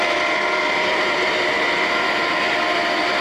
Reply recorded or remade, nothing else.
remade